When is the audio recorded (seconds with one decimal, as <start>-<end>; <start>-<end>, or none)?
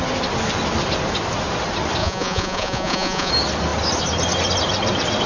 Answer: 0.0-2.0; 3.3-5.3